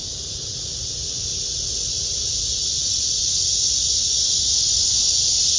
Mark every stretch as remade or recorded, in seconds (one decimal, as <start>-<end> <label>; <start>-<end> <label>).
0.0-2.8 recorded; 2.8-3.5 remade; 3.5-5.6 recorded